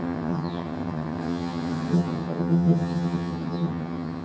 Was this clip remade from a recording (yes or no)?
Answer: yes